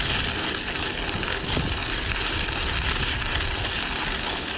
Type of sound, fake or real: real